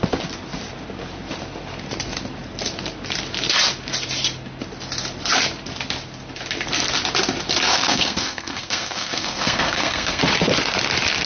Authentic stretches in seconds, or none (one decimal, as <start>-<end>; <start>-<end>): 0.0-7.7; 10.2-11.3